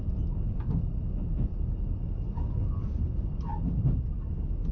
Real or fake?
real